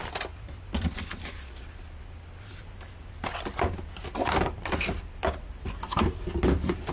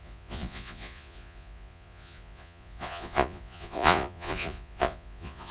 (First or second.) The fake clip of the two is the second